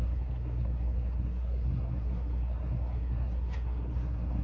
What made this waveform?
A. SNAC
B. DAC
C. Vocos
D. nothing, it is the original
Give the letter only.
A